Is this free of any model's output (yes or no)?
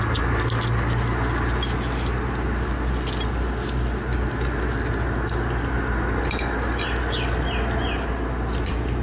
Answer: yes